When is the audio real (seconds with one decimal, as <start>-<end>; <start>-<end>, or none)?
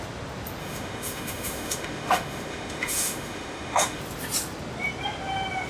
0.0-0.6; 4.0-5.7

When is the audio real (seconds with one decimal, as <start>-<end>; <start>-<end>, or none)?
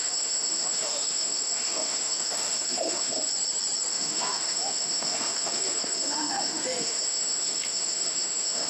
3.3-3.9